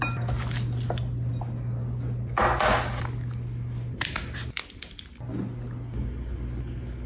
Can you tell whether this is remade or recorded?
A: recorded